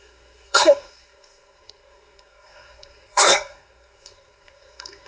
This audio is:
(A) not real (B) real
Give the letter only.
A